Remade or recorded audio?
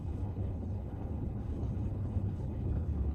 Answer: remade